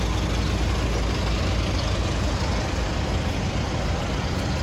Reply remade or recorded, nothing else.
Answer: recorded